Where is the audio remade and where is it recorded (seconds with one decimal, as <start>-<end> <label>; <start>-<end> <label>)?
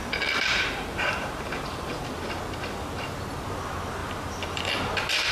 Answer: 0.0-2.0 remade; 2.0-4.0 recorded; 4.0-4.6 remade; 4.6-5.3 recorded